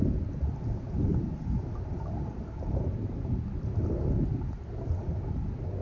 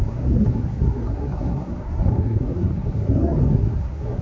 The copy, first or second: second